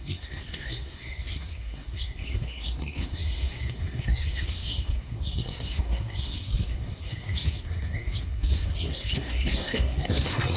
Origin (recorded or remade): remade